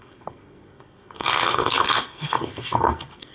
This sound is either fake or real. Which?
fake